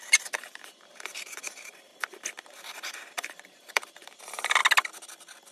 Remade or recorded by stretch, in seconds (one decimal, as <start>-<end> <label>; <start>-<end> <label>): 0.0-1.9 remade; 1.9-2.4 recorded; 2.4-4.6 remade; 4.6-5.5 recorded